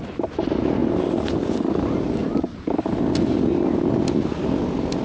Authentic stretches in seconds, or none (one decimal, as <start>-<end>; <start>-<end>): 0.0-5.0